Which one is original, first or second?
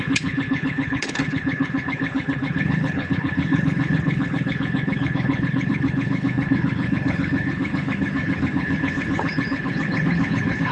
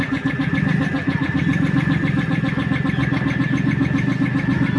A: second